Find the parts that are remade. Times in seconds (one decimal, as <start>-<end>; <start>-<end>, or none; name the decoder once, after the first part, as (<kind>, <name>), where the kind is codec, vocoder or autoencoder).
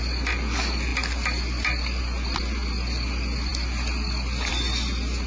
none